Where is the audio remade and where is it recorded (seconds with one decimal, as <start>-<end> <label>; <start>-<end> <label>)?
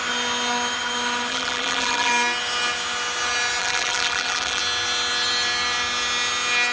0.0-1.3 recorded; 1.3-2.1 remade; 2.1-3.6 recorded; 3.6-4.6 remade; 4.6-6.7 recorded